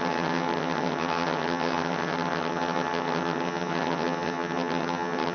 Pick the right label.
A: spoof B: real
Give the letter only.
A